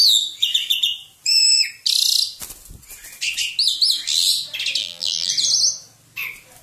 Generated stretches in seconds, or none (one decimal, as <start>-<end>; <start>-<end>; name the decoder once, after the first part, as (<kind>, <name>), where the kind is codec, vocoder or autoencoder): 4.8-5.3 (vocoder, BigVGAN v2)